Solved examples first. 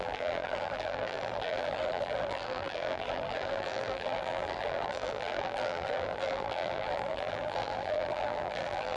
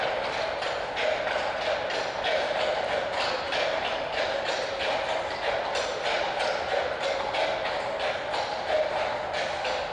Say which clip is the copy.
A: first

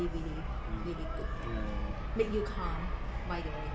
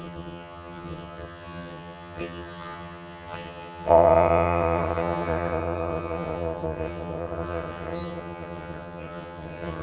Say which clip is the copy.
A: second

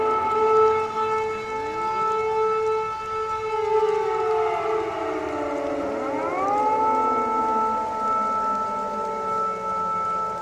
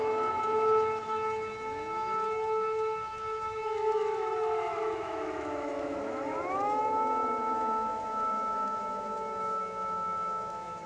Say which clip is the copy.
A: second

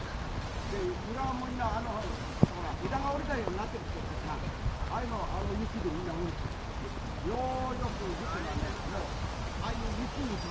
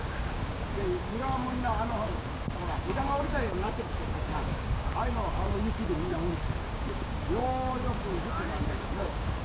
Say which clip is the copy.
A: second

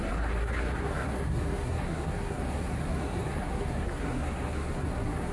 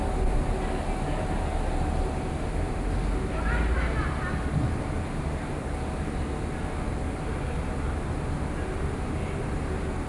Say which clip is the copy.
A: first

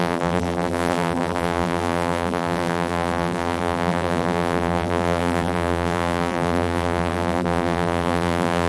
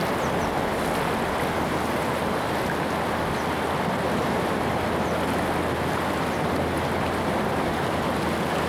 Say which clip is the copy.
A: first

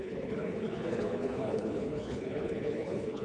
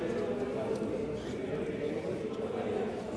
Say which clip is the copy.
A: first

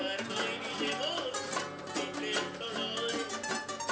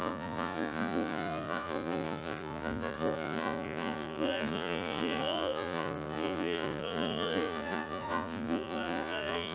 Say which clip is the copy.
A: second